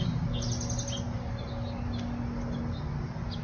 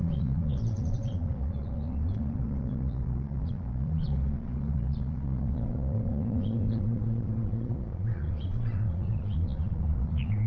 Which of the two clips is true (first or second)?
first